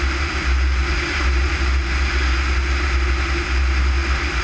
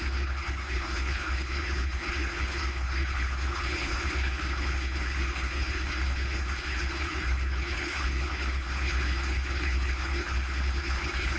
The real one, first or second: first